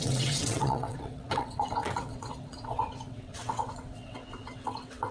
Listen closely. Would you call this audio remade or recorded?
remade